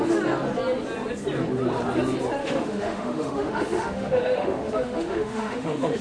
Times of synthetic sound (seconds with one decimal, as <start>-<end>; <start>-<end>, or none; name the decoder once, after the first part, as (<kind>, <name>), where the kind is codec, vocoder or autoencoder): 2.4-6.0 (autoencoder, DAC-VAE)